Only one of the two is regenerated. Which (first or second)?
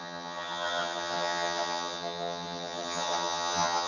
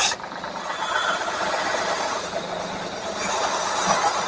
first